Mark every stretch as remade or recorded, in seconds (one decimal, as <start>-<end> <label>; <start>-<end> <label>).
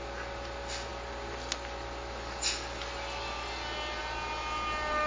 0.0-5.1 recorded